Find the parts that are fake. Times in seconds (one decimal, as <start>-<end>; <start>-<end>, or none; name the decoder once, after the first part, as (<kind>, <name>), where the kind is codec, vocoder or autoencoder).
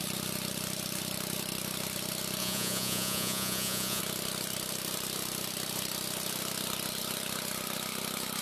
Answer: 2.4-4.0 (vocoder, Vocos)